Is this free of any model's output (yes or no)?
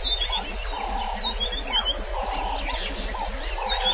yes